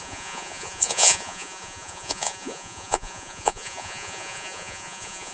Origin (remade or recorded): remade